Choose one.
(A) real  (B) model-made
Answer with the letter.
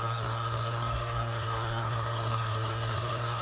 B